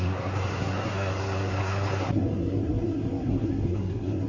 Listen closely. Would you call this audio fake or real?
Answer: fake